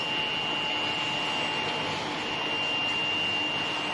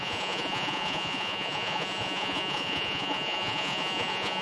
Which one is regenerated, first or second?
second